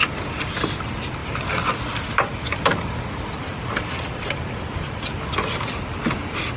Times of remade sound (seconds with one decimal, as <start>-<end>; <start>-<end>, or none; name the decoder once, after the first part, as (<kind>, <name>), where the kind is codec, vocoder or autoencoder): none